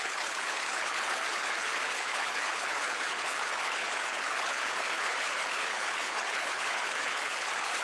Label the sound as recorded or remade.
remade